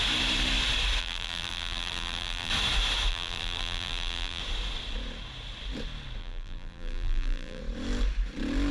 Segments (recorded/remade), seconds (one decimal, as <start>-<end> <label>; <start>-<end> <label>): 0.0-1.0 recorded; 1.0-2.5 remade; 2.5-3.1 recorded; 3.1-4.4 remade; 4.4-6.2 recorded; 6.2-7.6 remade; 7.6-8.7 recorded